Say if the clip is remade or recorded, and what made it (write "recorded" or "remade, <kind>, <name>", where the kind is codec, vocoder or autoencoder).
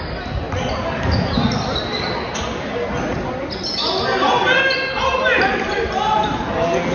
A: recorded